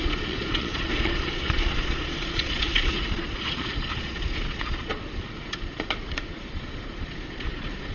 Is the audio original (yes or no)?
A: no